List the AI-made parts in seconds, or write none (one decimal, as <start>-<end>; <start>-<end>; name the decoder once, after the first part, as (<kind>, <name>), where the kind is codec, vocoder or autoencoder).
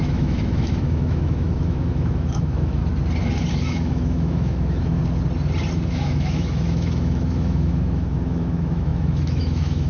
0.0-2.8 (autoencoder, DAC-VAE); 3.5-5.0; 5.9-9.9